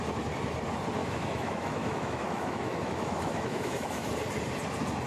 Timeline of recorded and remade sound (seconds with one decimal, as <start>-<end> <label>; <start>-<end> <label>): 0.0-1.0 recorded; 1.0-4.1 remade; 4.1-5.1 recorded

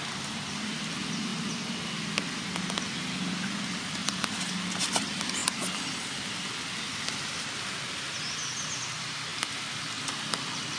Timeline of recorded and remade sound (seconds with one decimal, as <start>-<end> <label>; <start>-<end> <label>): 0.0-10.8 recorded

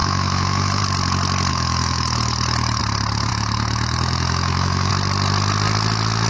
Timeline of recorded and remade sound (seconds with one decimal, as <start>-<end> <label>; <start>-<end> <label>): 0.0-0.8 remade; 0.8-1.5 recorded; 1.5-2.8 remade; 2.8-3.3 recorded; 3.3-4.9 remade; 4.9-6.3 recorded

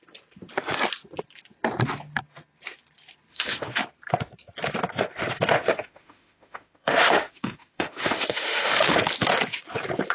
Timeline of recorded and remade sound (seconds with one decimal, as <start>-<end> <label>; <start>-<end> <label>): 0.0-3.3 recorded; 3.3-3.8 remade; 3.8-5.7 recorded; 5.7-9.0 remade; 9.0-10.1 recorded

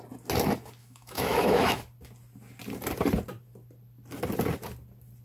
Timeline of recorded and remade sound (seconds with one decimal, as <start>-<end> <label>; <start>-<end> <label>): 0.0-0.8 recorded; 0.8-1.8 remade; 1.8-5.2 recorded